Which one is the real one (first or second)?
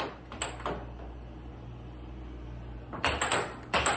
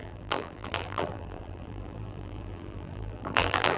first